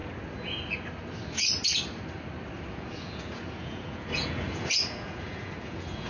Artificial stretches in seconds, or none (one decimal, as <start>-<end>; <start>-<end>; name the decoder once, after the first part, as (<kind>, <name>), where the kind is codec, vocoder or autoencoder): 2.7-6.1 (vocoder, Vocos)